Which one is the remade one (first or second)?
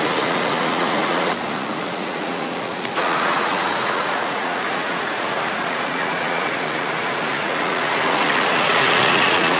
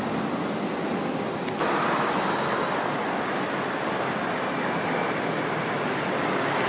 first